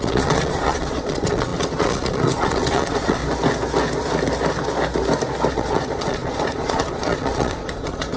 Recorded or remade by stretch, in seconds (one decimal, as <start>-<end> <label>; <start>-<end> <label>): 0.0-3.2 remade; 3.2-5.5 recorded; 5.5-8.2 remade